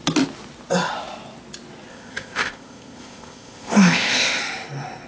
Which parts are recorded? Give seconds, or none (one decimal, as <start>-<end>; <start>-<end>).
0.0-1.9; 4.4-5.1